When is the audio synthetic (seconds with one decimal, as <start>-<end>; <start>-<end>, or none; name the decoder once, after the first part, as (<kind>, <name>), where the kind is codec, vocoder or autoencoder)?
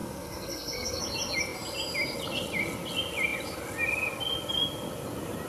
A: 0.0-1.0 (codec, SNAC)